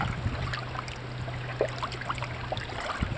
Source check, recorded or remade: recorded